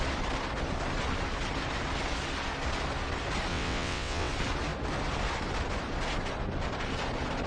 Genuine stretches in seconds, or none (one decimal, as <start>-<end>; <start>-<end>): 0.0-3.5; 4.3-7.5